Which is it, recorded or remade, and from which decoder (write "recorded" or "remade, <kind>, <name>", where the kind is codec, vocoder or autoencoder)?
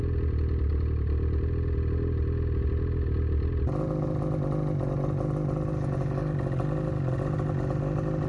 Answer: recorded